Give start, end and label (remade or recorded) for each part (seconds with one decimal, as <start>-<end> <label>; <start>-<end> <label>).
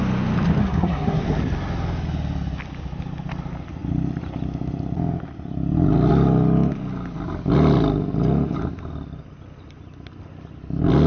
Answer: 0.0-0.6 recorded; 0.6-1.2 remade; 1.2-11.1 recorded